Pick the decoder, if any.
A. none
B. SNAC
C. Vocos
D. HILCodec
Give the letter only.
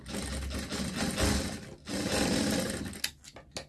A